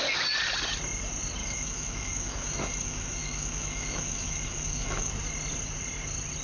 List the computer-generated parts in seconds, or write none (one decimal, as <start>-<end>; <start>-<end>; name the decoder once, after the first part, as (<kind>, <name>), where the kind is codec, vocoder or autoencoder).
1.4-5.1 (autoencoder, DAC-VAE)